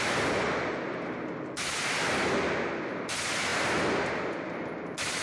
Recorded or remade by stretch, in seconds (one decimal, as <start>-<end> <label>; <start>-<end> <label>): 0.0-5.2 recorded